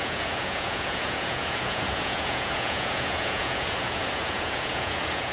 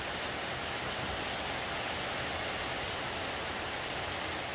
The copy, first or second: first